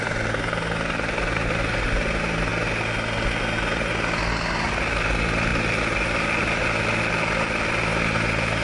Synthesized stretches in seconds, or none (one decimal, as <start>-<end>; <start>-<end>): none